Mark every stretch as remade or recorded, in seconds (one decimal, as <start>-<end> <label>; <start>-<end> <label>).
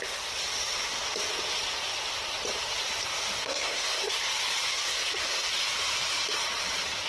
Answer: 0.0-3.4 recorded; 3.4-4.2 remade; 4.2-4.7 recorded; 4.7-5.5 remade; 5.5-7.1 recorded